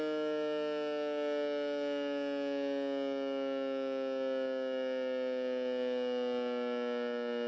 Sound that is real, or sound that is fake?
real